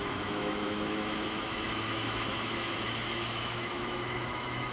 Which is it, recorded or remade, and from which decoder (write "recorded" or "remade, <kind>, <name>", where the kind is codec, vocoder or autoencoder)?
remade, autoencoder, DAC-VAE